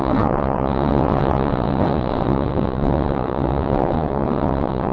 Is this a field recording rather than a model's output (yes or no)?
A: no